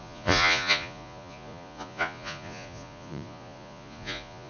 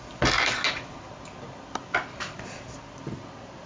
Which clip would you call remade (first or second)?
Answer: first